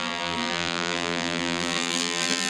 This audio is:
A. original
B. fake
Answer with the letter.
B